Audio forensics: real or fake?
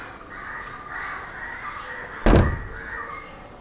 real